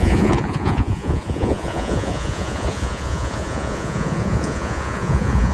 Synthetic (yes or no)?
yes